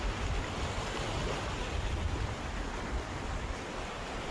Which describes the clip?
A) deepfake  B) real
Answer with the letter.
B